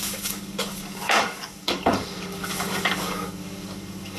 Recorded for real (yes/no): no